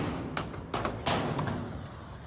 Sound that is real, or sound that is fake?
real